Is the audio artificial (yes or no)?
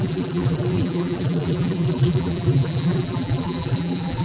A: yes